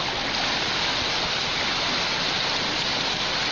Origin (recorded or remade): recorded